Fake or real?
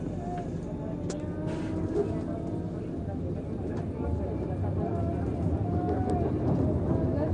real